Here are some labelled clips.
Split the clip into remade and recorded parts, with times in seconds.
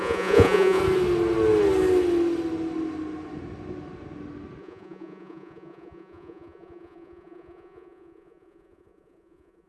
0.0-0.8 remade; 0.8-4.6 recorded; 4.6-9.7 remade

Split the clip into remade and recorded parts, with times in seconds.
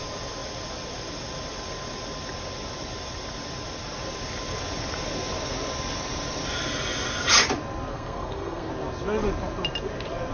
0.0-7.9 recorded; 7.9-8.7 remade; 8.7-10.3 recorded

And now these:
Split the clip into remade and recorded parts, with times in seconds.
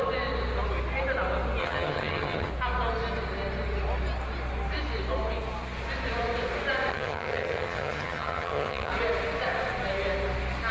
0.0-1.6 recorded; 1.6-2.5 remade; 2.5-6.9 recorded; 6.9-8.9 remade; 8.9-10.7 recorded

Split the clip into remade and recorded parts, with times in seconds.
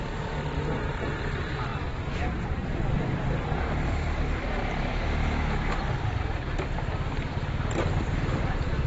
0.0-4.6 remade; 4.6-7.7 recorded; 7.7-8.9 remade